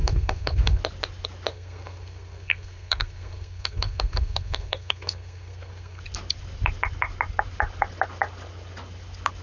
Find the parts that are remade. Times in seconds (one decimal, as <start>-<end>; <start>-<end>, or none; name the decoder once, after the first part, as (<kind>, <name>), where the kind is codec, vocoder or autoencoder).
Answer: 0.0-0.8 (codec, SNAC); 1.5-6.0